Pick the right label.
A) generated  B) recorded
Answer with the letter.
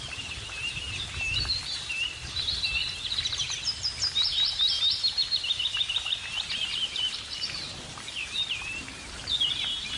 A